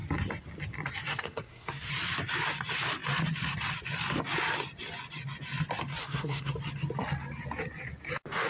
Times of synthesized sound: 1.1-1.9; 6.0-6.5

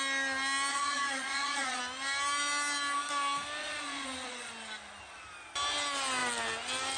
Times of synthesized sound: 0.7-1.8; 3.6-4.5

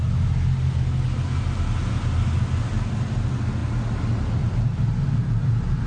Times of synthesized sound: none